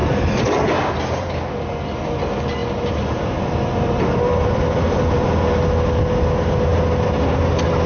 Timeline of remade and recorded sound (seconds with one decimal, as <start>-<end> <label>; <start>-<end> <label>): 0.0-0.7 remade; 0.7-2.6 recorded; 2.6-5.3 remade; 5.3-7.9 recorded